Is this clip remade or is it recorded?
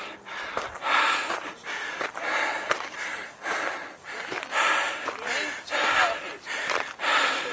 recorded